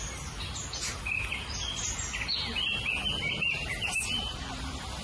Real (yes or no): yes